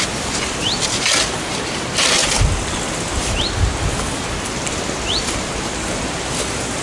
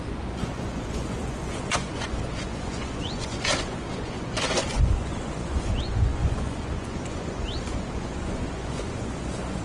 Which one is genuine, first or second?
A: first